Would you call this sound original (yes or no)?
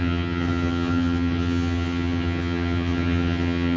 no